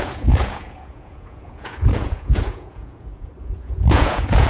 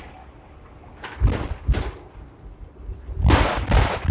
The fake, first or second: first